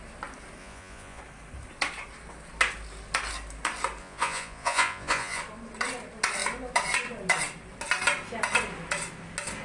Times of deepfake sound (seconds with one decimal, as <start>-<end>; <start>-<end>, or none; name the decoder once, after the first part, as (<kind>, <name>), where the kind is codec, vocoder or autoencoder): 0.6-1.2 (vocoder, Vocos); 4.0-5.4